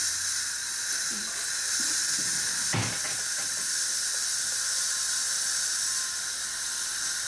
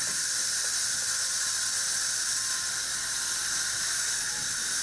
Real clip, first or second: first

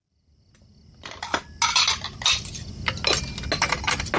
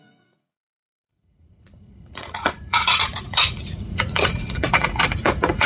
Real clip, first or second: first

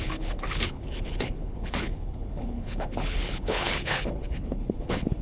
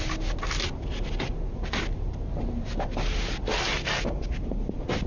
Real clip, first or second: second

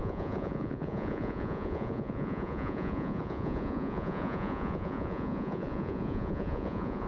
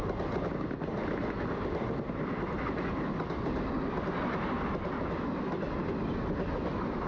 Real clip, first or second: second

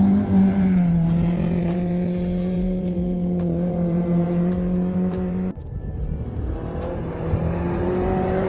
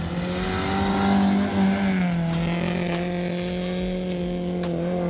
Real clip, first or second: second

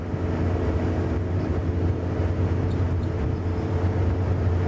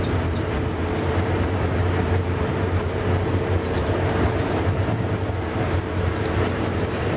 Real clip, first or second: first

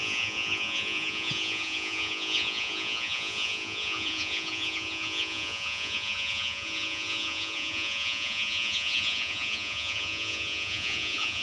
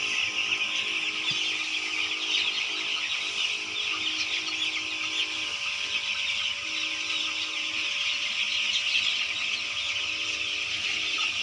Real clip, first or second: second